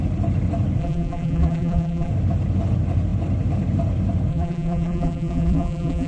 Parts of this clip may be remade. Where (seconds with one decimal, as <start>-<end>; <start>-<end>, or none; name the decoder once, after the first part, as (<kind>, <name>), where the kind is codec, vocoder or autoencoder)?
0.8-2.1 (vocoder, BigVGAN v2); 4.3-6.1